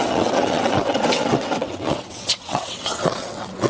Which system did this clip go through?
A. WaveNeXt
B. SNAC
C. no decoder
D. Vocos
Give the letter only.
A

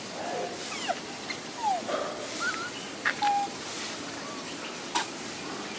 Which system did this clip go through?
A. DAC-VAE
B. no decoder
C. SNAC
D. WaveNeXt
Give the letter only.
B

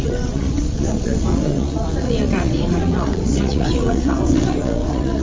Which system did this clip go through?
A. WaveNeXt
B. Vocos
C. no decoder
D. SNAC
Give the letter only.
A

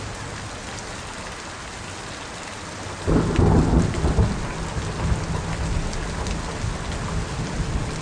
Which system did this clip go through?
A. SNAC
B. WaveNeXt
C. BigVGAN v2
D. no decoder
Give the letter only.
D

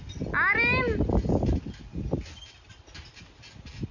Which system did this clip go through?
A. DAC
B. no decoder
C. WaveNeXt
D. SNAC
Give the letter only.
B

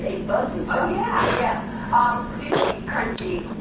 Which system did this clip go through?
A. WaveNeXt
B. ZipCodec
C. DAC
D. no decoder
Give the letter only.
A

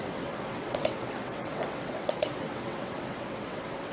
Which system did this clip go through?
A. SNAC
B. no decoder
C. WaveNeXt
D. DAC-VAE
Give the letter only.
C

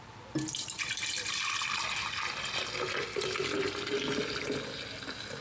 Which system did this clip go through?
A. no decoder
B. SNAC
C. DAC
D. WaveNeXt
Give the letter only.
A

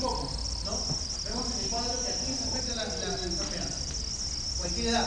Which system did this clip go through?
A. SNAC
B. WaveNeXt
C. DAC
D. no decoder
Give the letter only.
D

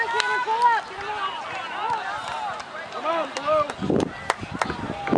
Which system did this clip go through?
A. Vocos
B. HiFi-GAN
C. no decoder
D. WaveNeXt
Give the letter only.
C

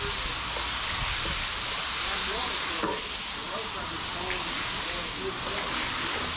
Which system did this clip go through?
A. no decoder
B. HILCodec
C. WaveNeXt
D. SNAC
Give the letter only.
A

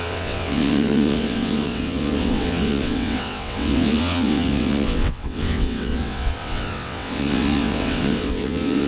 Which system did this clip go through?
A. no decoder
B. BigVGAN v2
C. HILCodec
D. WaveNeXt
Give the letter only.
D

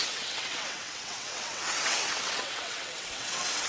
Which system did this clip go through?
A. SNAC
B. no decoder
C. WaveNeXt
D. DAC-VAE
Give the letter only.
C